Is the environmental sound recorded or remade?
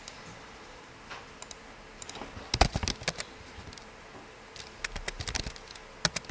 recorded